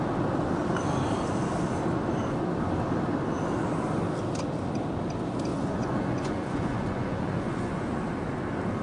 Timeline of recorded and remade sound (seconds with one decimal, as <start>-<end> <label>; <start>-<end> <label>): 0.0-5.5 recorded; 5.5-8.0 remade; 8.0-8.8 recorded